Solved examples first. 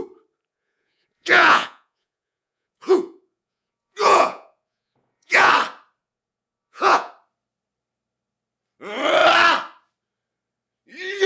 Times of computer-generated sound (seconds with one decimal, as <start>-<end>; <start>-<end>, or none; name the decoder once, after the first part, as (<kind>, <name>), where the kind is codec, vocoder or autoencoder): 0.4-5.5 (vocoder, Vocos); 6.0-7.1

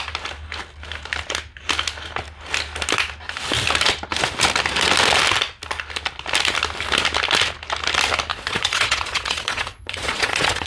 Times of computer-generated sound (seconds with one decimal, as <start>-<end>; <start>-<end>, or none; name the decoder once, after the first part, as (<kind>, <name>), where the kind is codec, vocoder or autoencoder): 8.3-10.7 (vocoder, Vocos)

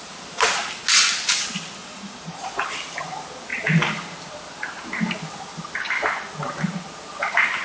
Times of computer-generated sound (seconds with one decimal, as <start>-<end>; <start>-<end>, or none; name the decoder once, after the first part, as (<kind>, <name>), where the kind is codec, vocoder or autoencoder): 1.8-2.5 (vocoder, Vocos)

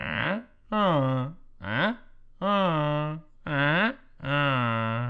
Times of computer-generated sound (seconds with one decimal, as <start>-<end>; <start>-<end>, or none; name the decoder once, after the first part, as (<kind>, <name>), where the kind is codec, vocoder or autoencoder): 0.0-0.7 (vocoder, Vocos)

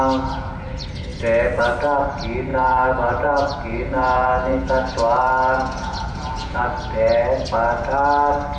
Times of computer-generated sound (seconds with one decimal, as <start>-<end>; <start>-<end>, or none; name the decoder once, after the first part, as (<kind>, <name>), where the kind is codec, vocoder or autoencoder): 2.5-6.6 (vocoder, Vocos)

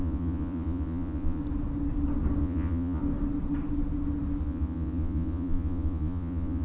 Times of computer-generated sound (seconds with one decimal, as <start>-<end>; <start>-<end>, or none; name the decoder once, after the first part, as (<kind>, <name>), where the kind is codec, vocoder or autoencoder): 0.0-1.4 (vocoder, Vocos); 2.4-3.0; 4.4-6.6